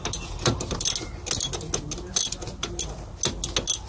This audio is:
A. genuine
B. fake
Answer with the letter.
A